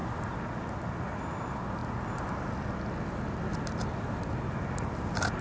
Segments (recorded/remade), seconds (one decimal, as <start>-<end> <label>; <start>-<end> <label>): 0.0-5.4 recorded